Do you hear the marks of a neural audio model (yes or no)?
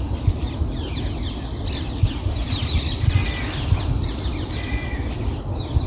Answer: no